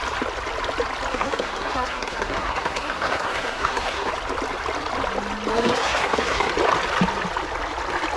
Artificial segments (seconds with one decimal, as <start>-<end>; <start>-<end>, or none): 1.1-4.1; 5.5-6.5